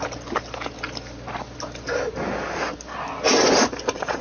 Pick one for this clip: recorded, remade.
recorded